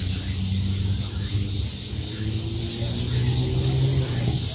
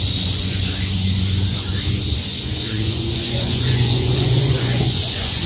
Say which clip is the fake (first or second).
second